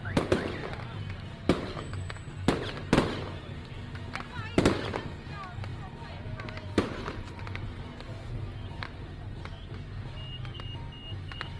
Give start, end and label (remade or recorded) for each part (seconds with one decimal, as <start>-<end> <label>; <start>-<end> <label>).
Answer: 0.0-11.6 recorded